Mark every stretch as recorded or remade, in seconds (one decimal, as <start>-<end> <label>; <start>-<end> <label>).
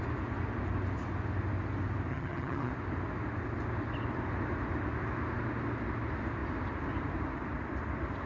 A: 0.0-2.1 recorded; 2.1-2.7 remade; 2.7-8.3 recorded